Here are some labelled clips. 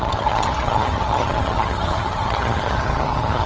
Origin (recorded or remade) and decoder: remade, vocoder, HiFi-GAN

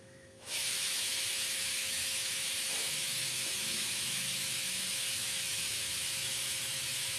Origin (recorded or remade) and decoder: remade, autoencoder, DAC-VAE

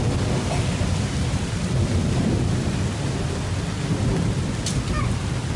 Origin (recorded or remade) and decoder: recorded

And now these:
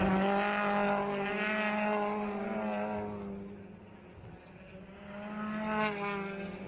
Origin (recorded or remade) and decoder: recorded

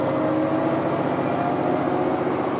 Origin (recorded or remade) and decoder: recorded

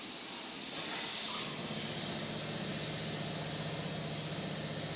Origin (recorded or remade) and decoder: recorded